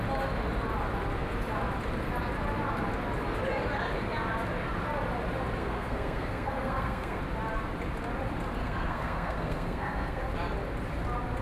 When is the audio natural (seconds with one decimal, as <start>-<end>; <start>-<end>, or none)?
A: 0.0-5.6; 7.2-8.6; 10.2-11.4